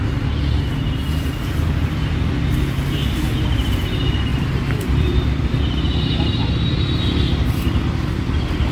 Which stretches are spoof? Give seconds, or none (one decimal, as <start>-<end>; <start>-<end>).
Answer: 4.3-5.5